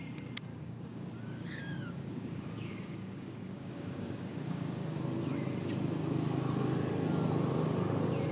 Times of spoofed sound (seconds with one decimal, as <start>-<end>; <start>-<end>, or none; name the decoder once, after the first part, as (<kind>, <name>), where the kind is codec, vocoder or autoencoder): 0.5-5.0 (codec, DAC)